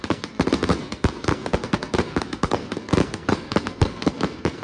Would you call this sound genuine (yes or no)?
no